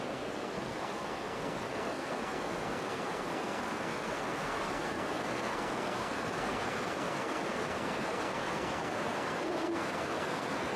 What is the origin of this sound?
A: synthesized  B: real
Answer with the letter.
A